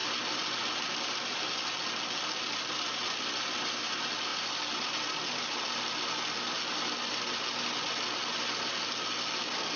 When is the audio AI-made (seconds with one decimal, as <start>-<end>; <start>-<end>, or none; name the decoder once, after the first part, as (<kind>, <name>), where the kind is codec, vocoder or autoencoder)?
none